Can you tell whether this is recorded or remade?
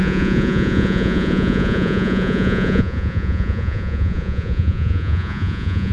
remade